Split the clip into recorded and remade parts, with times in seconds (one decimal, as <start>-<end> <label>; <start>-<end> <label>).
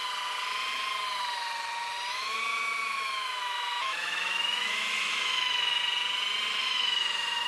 0.0-2.1 recorded; 2.1-5.8 remade; 5.8-6.6 recorded; 6.6-7.5 remade